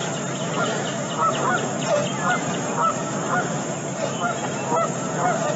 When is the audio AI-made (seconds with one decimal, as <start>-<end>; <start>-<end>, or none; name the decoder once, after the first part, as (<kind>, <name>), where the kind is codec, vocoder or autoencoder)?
none